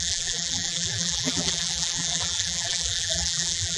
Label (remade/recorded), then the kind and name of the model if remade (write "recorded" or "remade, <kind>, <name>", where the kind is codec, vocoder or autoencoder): remade, vocoder, BigVGAN v2